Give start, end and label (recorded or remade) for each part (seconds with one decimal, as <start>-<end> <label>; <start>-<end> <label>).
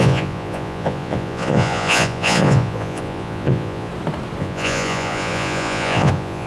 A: 0.0-3.9 remade; 3.9-4.4 recorded; 4.4-6.5 remade